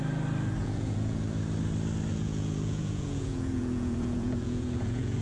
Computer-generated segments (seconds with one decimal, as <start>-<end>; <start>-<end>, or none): 0.6-1.2; 2.1-5.2